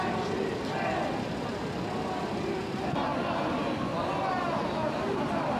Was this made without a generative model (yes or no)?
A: yes